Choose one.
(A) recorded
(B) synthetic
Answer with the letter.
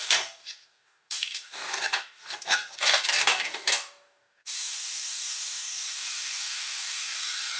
B